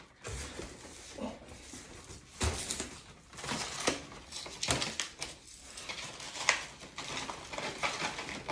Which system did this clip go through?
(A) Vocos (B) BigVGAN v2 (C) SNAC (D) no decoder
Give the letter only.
D